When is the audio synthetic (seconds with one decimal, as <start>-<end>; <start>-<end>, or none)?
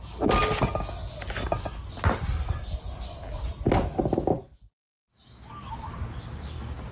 none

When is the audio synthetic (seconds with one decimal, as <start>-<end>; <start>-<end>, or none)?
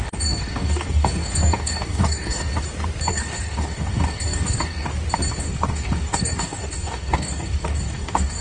0.0-2.5; 3.1-4.9; 5.4-8.4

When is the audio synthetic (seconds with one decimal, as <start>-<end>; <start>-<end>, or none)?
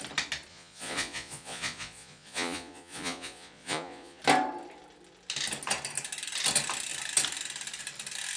0.5-4.2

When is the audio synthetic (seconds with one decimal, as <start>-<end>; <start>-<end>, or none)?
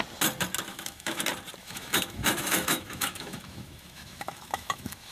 0.7-1.2; 1.6-5.1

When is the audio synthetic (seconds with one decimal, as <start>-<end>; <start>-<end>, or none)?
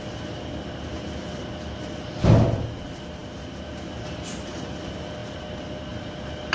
none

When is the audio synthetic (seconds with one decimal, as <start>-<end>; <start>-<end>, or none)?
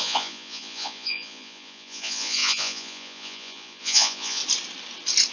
0.0-4.4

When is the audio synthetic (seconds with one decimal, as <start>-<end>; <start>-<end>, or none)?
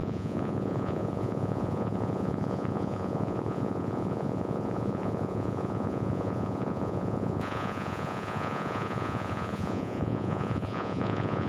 0.0-11.5